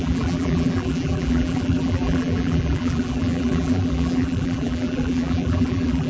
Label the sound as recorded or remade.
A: remade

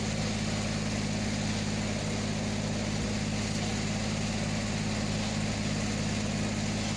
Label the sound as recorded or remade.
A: recorded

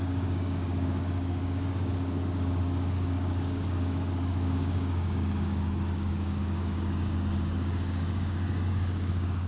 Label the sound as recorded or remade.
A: remade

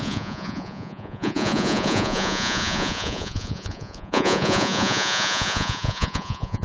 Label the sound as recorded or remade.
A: remade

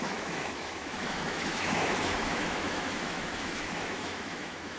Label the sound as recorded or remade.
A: remade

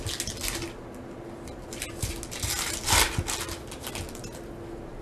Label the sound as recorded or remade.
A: recorded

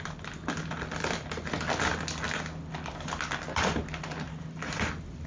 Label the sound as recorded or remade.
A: recorded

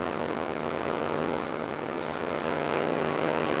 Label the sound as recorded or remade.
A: remade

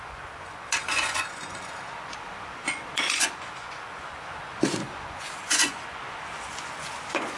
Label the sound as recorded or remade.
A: remade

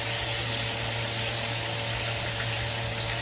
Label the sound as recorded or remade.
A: recorded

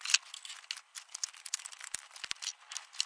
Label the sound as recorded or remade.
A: recorded